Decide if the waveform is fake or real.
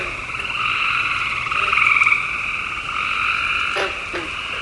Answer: real